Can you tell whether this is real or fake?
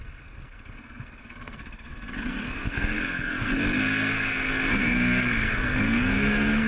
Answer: fake